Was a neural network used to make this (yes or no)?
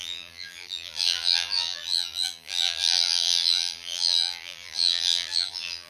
yes